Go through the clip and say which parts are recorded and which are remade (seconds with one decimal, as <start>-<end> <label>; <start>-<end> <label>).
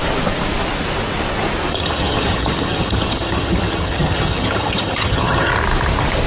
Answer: 0.0-1.7 recorded; 1.7-5.5 remade; 5.5-6.3 recorded